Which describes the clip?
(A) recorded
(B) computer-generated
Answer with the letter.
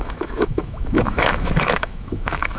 B